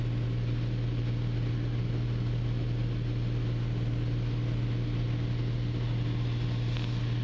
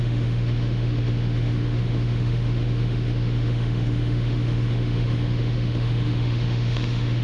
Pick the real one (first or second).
first